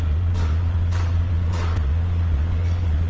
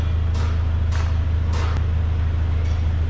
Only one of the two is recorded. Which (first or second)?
second